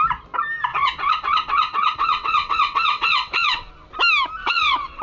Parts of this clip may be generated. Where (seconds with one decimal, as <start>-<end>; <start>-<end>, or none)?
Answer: 0.7-3.7; 4.4-5.0